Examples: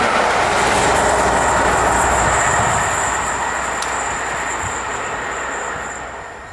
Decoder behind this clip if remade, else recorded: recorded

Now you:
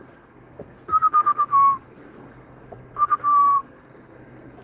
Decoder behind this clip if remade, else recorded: remade, codec, SNAC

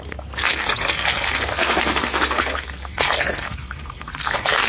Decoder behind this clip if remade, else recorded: remade, codec, SNAC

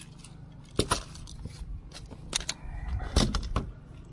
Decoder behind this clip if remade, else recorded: recorded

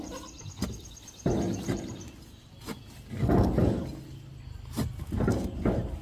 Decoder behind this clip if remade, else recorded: recorded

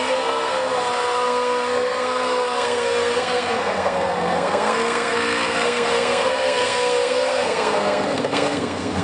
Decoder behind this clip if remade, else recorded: remade, codec, SNAC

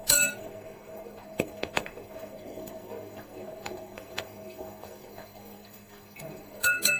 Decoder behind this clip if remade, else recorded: remade, codec, SNAC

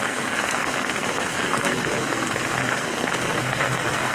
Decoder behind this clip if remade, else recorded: remade, codec, SNAC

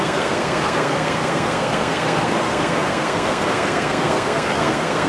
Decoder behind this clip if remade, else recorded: remade, codec, SNAC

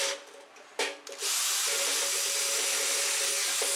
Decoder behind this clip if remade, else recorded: recorded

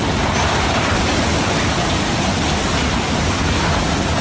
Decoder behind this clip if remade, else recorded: recorded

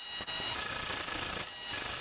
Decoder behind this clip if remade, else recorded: recorded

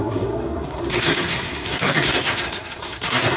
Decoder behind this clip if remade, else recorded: remade, codec, SNAC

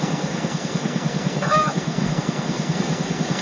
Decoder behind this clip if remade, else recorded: remade, codec, SNAC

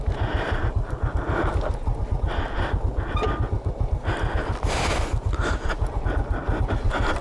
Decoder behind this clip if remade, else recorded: recorded